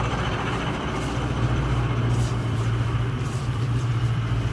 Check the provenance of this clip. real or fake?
fake